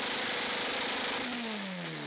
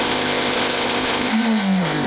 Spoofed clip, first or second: second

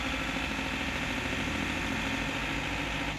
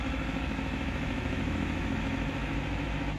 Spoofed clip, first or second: second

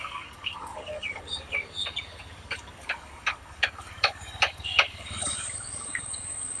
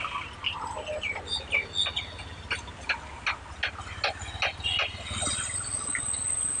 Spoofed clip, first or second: first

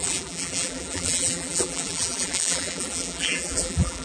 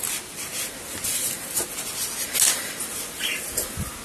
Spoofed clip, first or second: first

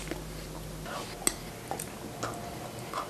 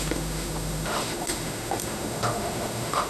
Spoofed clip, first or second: second